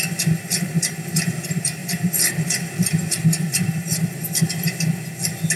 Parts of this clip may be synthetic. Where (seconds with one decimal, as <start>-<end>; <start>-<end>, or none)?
none